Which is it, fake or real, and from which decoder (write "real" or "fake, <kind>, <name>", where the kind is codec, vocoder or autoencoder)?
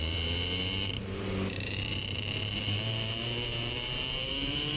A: fake, vocoder, BigVGAN v2